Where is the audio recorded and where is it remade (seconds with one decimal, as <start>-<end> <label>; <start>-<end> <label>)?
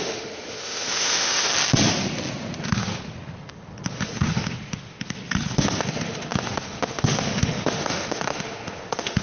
0.0-1.5 remade; 1.5-2.6 recorded; 2.6-3.0 remade; 3.0-3.9 recorded; 3.9-5.2 remade; 5.2-5.8 recorded; 5.8-9.2 remade